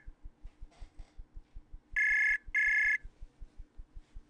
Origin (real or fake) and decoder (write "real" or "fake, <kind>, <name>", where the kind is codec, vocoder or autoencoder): real